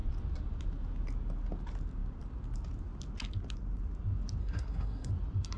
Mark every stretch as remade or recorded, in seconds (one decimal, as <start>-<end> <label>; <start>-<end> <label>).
0.0-4.4 recorded; 4.4-5.1 remade; 5.1-5.6 recorded